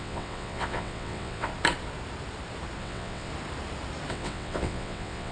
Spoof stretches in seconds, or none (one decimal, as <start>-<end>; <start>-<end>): 0.0-1.5; 2.8-3.3; 4.1-5.3

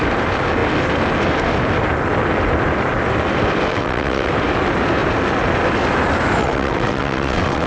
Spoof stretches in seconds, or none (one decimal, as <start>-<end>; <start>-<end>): 3.7-4.3; 6.4-7.7

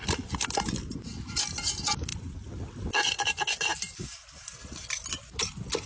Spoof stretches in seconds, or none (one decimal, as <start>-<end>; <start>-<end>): none

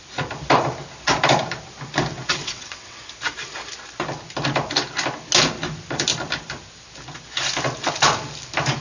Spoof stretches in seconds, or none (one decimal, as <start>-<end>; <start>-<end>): 2.3-3.0

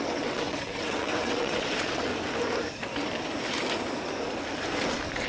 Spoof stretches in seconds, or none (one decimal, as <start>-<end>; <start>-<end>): 0.0-2.1

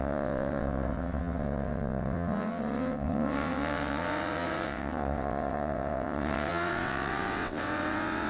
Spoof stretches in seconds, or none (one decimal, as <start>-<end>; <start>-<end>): 0.0-8.3